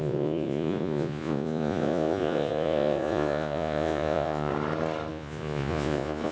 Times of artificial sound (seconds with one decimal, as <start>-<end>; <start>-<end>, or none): 0.0-4.5; 5.1-6.3